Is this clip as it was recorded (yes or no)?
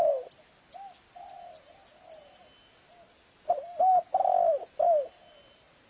yes